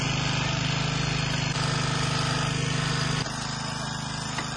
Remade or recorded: recorded